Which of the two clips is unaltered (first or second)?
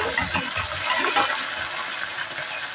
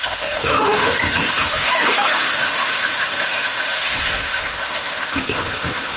first